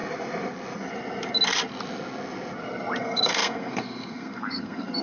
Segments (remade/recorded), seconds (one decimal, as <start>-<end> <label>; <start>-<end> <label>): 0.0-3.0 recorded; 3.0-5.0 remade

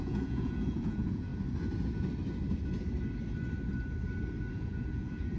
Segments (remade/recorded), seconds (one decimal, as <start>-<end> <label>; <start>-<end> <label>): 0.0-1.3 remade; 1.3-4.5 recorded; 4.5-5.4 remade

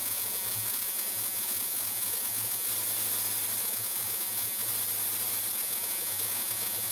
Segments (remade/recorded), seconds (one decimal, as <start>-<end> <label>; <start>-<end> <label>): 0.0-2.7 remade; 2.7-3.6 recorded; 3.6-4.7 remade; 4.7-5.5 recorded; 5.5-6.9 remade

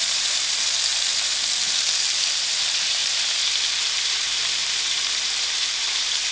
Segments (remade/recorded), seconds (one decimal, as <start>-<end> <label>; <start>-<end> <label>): 0.0-0.9 remade; 0.9-2.4 recorded; 2.4-6.3 remade